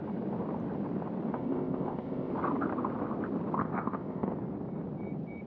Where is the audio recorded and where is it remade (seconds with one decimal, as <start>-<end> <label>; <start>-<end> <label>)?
0.0-1.3 recorded; 1.3-2.3 remade; 2.3-3.6 recorded; 3.6-4.3 remade; 4.3-5.5 recorded